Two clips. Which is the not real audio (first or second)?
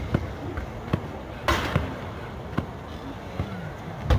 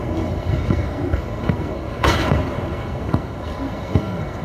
second